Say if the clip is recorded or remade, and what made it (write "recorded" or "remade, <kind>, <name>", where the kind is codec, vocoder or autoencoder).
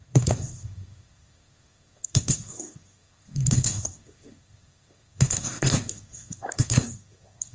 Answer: remade, codec, SNAC